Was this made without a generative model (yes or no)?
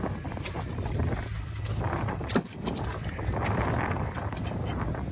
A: no